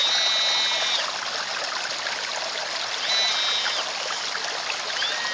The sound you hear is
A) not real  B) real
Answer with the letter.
B